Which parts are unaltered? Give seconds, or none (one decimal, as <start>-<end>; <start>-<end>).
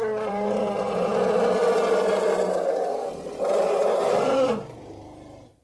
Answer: 1.1-3.6